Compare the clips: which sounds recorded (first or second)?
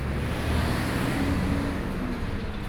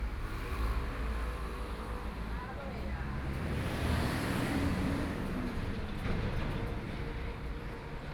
first